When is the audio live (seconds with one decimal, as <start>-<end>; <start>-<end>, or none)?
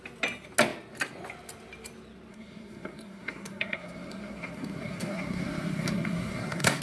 0.0-2.3